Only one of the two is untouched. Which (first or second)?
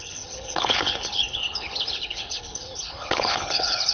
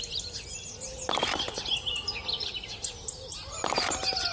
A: second